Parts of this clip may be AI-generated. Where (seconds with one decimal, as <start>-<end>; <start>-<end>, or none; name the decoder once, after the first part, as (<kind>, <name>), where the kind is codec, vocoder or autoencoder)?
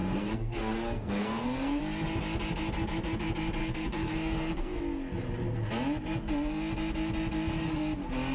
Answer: 0.0-1.8 (codec, SNAC); 3.6-4.8